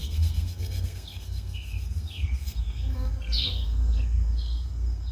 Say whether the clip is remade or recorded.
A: remade